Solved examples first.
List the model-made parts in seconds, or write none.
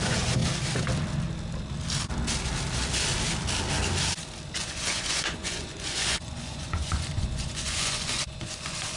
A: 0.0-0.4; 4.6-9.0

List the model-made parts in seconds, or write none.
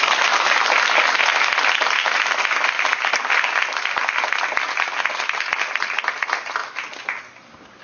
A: none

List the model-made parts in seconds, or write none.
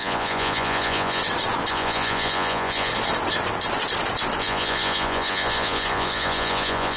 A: 0.0-1.2; 1.7-2.9; 4.4-7.0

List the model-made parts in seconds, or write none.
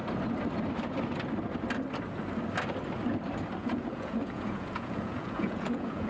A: 3.6-6.1